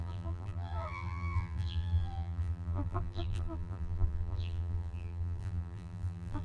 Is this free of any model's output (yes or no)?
no